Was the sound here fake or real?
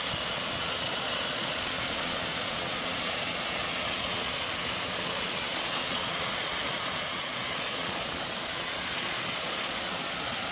fake